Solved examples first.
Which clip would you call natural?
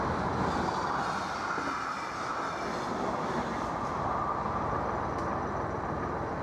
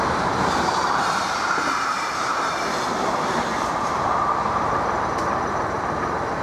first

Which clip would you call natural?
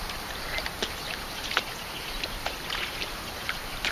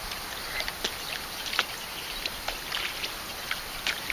second